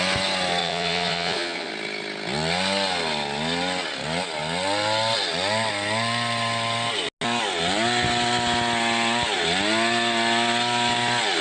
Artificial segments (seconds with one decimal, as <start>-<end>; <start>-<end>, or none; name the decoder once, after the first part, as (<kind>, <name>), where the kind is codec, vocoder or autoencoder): 0.6-1.7 (vocoder, Vocos)